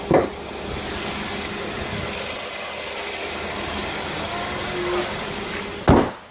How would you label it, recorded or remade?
recorded